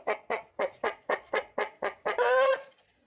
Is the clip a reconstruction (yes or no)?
yes